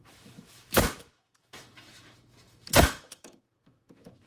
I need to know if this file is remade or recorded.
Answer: remade